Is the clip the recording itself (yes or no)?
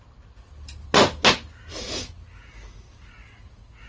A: yes